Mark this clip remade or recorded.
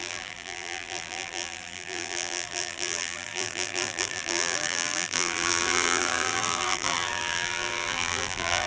remade